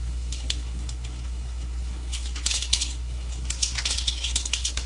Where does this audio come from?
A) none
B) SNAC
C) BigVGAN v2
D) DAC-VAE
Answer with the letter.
B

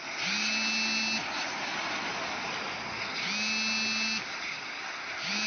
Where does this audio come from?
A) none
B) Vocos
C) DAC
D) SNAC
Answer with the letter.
A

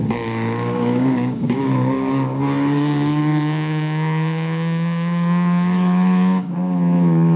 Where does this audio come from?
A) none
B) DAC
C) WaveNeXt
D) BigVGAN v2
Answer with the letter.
B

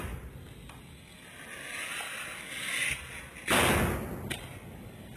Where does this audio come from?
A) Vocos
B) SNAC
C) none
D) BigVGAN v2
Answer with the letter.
C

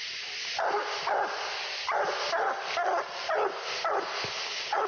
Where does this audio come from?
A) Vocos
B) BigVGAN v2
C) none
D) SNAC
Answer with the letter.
C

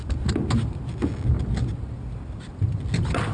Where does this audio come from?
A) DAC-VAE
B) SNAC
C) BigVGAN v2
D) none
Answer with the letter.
D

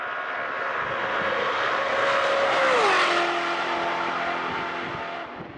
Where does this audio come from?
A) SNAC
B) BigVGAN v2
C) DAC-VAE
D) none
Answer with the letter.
D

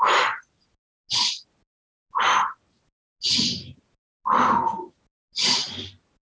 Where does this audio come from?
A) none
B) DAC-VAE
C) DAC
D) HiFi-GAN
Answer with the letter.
A